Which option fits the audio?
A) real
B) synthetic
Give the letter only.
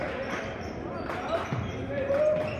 A